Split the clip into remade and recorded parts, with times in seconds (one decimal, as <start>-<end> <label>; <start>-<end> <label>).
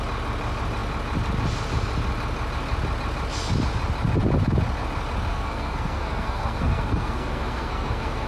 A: 0.0-5.3 recorded; 5.3-8.3 remade